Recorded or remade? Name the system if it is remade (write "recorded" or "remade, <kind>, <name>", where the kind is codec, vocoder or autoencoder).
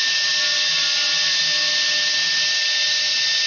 recorded